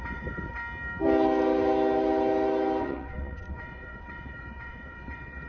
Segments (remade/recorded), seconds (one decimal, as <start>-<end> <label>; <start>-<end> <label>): 0.0-0.6 remade; 0.6-2.8 recorded; 2.8-5.5 remade